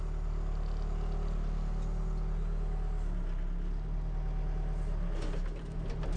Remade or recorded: recorded